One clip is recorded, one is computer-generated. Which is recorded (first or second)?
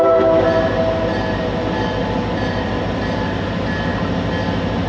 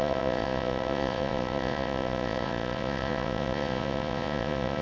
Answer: first